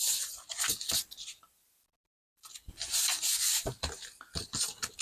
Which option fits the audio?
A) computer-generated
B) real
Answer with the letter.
A